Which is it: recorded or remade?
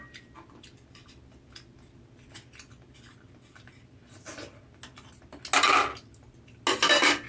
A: recorded